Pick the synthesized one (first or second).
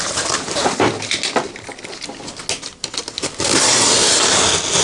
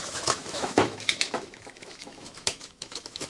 second